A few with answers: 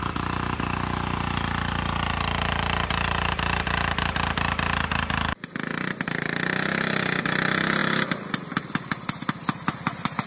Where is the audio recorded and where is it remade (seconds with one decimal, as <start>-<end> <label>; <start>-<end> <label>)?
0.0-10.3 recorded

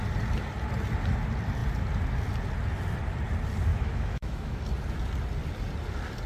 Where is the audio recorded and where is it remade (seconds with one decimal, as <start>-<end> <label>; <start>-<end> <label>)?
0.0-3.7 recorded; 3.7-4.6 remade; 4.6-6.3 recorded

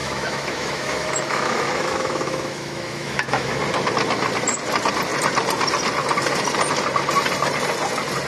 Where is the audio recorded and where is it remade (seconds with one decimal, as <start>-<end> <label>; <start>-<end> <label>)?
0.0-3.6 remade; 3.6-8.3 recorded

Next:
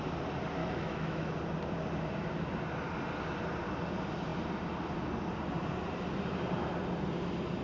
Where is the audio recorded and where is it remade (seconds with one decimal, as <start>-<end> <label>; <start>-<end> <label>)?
0.0-0.6 recorded; 0.6-1.3 remade; 1.3-7.6 recorded